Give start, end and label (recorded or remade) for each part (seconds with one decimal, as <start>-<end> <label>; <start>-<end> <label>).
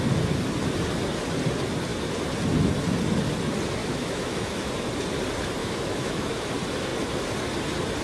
0.0-3.8 recorded; 3.8-4.7 remade; 4.7-5.6 recorded; 5.6-6.5 remade; 6.5-8.0 recorded